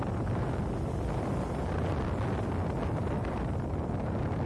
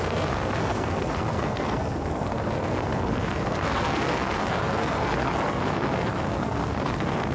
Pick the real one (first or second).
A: first